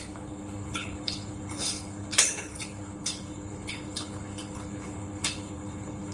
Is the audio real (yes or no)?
no